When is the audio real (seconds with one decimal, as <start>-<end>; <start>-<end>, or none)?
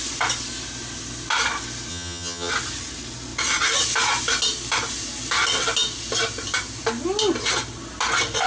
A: 0.0-1.9; 2.5-8.5